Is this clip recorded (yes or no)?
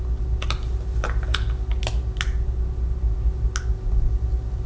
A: yes